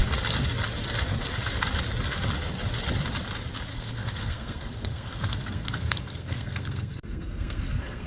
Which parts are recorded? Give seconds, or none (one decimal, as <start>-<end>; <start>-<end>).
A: 0.0-3.7